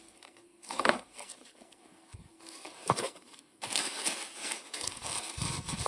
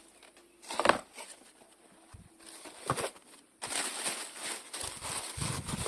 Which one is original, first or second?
second